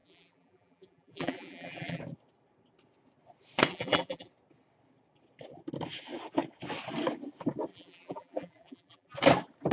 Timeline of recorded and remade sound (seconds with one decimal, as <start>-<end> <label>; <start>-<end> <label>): 0.0-2.0 remade; 2.0-3.7 recorded; 3.7-4.3 remade; 4.3-7.7 recorded; 7.7-9.1 remade; 9.1-9.7 recorded